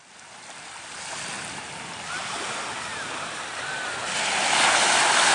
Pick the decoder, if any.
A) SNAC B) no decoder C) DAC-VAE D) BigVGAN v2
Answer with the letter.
B